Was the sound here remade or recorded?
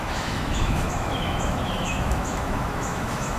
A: remade